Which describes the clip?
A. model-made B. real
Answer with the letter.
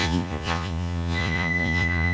A